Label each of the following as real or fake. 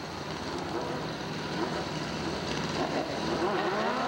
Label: real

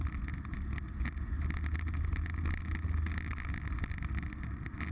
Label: real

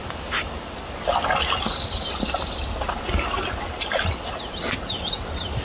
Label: real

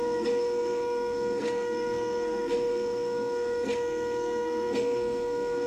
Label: fake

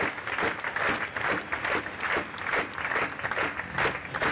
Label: real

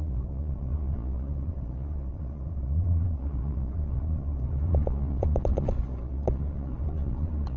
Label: fake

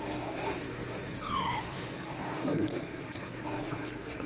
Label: fake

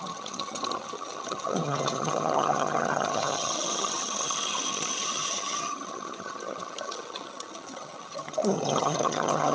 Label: fake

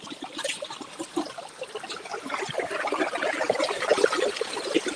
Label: real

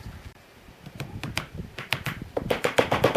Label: fake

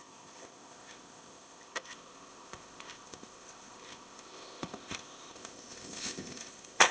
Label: fake